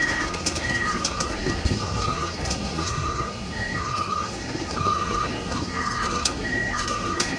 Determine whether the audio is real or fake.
fake